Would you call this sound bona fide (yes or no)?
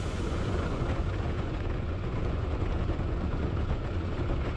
no